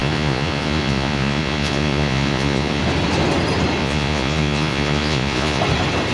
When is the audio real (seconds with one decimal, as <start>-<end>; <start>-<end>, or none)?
2.8-3.8; 5.6-6.1